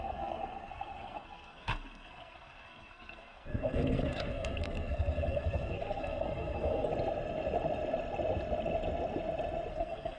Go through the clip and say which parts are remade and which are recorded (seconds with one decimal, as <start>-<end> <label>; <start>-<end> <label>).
0.0-6.9 remade; 6.9-9.7 recorded; 9.7-10.2 remade